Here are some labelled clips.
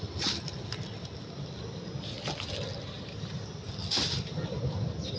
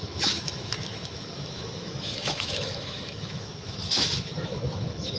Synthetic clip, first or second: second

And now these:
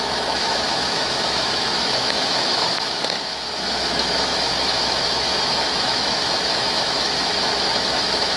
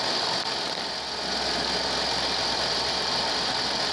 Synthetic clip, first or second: first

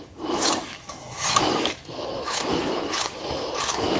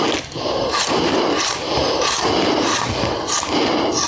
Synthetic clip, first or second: first